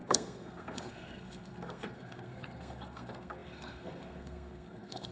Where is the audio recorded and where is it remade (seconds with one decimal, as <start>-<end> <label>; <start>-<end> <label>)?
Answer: 0.0-5.1 remade

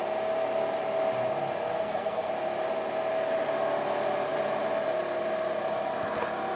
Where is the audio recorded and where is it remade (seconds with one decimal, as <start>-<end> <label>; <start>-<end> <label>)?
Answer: 0.0-1.7 recorded; 1.7-2.3 remade; 2.3-6.6 recorded